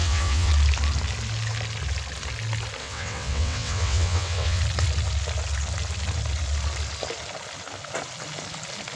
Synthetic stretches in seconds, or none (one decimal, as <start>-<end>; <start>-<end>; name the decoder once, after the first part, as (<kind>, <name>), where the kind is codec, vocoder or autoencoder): 0.0-0.5 (vocoder, WaveNeXt); 2.8-4.6